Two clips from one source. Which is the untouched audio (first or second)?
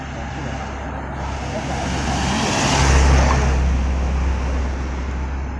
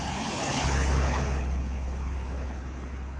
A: first